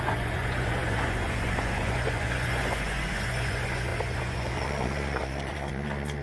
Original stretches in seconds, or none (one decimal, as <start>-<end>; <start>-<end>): none